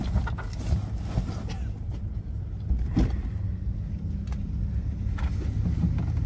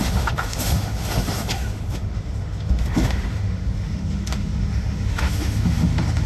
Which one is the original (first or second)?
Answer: first